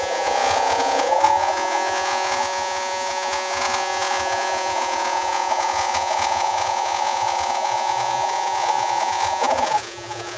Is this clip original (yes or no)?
no